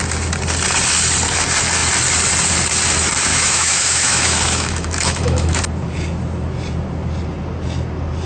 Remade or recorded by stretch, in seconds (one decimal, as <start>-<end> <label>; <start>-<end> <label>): 0.0-3.3 recorded; 3.3-5.6 remade; 5.6-8.3 recorded